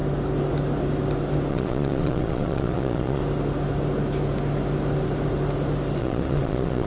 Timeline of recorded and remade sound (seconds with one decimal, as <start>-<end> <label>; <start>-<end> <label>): 0.0-1.5 recorded; 1.5-3.2 remade; 3.2-6.0 recorded; 6.0-6.9 remade